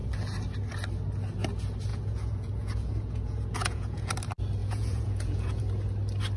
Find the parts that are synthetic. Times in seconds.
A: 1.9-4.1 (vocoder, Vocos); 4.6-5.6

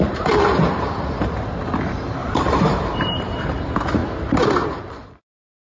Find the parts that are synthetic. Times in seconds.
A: 2.2-3.4 (vocoder, BigVGAN v2)